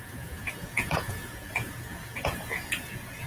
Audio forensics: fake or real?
fake